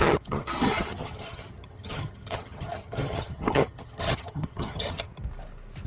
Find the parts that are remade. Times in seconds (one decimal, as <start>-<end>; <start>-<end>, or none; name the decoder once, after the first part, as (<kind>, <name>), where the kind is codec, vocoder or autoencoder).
0.0-5.1 (vocoder, HiFi-GAN)